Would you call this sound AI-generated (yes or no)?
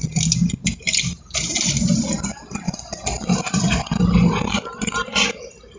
no